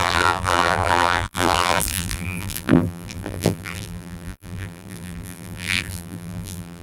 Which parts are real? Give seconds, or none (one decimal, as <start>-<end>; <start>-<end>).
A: none